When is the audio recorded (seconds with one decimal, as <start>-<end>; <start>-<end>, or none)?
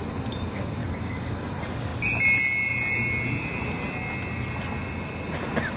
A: 0.0-0.8; 1.5-5.8